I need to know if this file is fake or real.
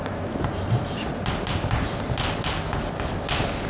real